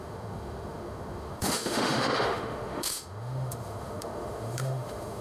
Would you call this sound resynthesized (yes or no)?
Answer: yes